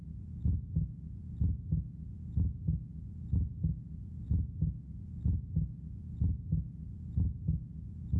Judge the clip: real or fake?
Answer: real